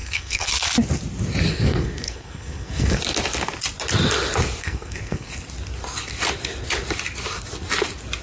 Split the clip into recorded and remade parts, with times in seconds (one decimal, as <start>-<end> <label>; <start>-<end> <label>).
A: 0.0-0.5 remade; 0.5-1.5 recorded; 1.5-3.0 remade; 3.0-4.6 recorded; 4.6-5.3 remade; 5.3-8.2 recorded